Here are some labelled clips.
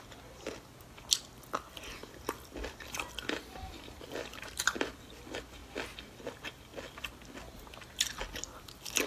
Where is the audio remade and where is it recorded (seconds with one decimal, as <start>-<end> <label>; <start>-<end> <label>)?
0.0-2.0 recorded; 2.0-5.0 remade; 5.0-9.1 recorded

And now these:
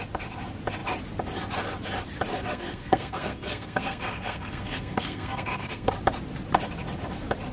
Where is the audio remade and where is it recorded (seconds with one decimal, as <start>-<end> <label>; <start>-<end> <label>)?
0.0-2.3 recorded; 2.3-5.9 remade; 5.9-7.5 recorded

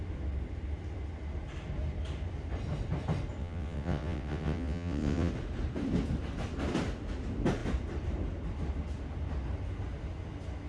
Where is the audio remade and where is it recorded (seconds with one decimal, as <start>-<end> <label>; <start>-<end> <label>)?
0.0-3.4 recorded; 3.4-5.3 remade; 5.3-10.7 recorded